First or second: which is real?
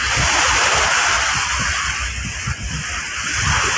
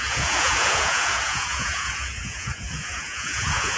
first